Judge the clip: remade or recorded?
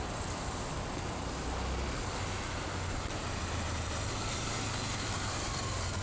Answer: recorded